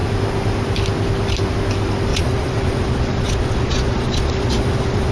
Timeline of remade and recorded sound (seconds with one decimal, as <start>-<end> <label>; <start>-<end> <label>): 0.0-2.1 recorded; 2.1-5.1 remade